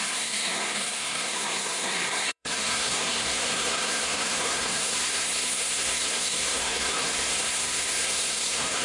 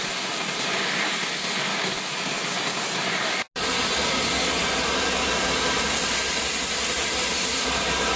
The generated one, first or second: first